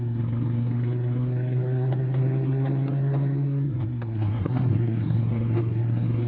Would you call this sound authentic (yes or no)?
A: no